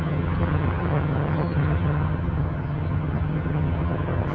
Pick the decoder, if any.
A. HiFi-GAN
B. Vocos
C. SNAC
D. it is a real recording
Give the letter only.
A